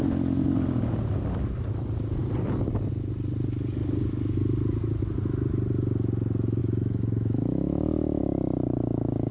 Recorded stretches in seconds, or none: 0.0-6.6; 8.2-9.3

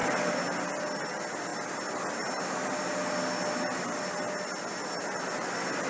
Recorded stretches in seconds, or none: 0.0-5.9

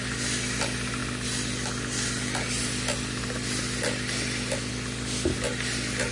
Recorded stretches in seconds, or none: 0.0-6.1

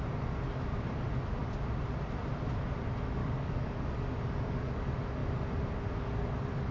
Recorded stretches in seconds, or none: 0.0-3.2; 4.8-6.7